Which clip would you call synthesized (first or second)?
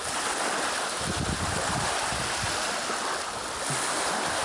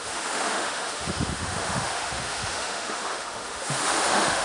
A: second